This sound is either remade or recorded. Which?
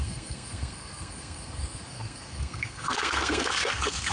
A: remade